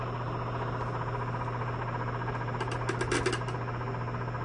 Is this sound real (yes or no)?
yes